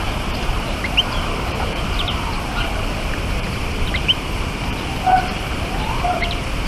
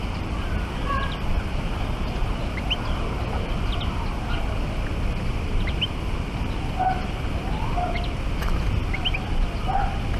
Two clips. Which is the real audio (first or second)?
second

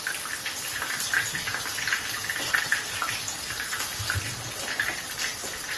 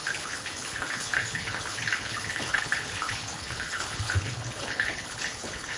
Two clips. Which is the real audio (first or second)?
first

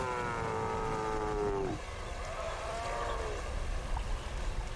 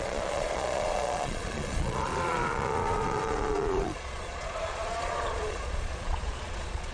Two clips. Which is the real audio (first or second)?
first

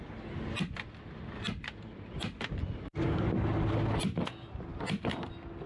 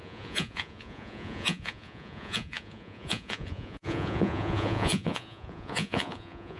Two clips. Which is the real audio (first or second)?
first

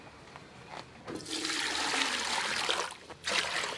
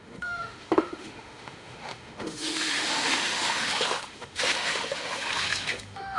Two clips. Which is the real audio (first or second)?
first